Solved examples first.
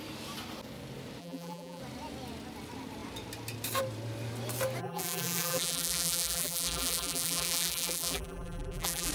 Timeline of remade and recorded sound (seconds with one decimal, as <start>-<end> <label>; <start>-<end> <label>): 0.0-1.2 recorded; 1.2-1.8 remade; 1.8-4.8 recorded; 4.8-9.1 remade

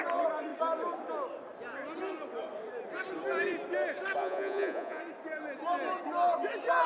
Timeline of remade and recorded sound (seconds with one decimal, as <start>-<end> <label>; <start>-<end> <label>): 0.0-4.2 recorded; 4.2-5.0 remade; 5.0-6.9 recorded

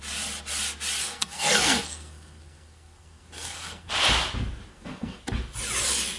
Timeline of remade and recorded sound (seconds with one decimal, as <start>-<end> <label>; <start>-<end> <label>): 0.0-1.0 recorded; 1.0-3.9 remade; 3.9-4.7 recorded; 4.7-5.2 remade; 5.2-6.2 recorded

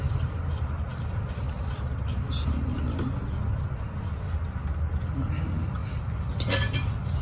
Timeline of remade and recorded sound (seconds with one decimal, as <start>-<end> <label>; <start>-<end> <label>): 0.0-5.8 recorded; 5.8-7.2 remade

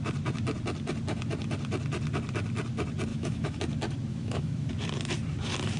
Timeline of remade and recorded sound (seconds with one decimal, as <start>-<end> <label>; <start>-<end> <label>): 0.0-3.1 recorded; 3.1-3.6 remade; 3.6-4.1 recorded; 4.1-4.7 remade; 4.7-5.8 recorded